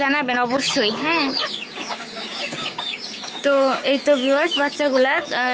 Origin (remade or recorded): remade